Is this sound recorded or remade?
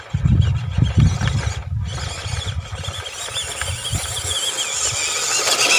recorded